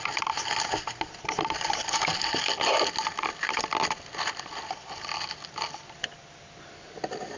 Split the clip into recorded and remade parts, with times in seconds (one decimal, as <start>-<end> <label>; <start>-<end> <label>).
0.0-7.4 recorded